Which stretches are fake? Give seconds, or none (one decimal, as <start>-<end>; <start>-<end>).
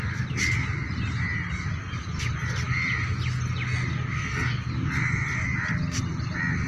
3.9-4.9